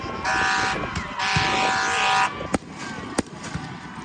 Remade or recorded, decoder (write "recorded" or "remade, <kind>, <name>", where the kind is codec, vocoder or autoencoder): recorded